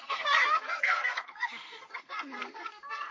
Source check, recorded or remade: remade